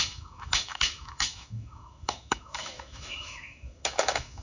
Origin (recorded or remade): remade